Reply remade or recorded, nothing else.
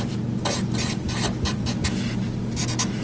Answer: recorded